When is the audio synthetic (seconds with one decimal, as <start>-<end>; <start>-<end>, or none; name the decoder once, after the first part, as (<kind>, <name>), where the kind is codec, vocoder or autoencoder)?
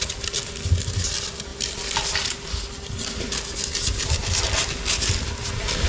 none